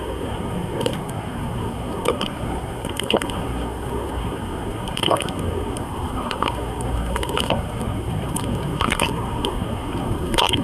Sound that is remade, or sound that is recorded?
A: remade